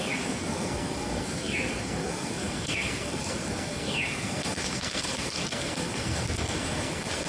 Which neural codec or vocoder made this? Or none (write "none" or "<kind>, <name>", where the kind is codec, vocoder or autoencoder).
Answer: codec, SNAC